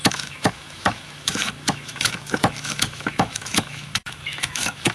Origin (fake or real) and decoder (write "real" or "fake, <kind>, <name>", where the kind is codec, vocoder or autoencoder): fake, autoencoder, DAC-VAE